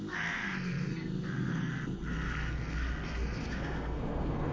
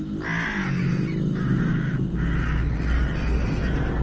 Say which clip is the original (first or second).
second